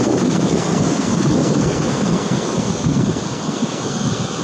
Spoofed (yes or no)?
yes